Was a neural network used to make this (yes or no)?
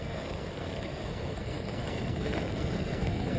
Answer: yes